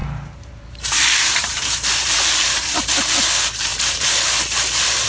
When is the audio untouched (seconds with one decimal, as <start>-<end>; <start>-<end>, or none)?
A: 3.1-3.7